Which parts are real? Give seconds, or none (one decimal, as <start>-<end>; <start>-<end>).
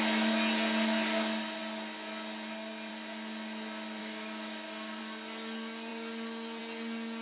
0.0-4.0; 5.0-7.2